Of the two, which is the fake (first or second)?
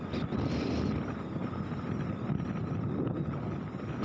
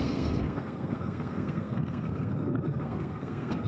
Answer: second